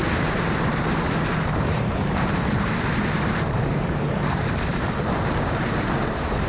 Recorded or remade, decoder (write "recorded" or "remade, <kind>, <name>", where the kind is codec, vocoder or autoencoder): remade, vocoder, BigVGAN v2